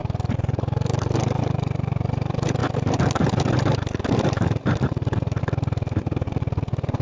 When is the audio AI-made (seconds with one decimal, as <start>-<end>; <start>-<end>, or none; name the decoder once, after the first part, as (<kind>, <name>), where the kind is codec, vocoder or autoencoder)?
0.0-2.6 (vocoder, BigVGAN v2); 5.4-7.0